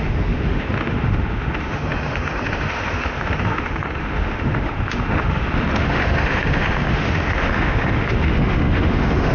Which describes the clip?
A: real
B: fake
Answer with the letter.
B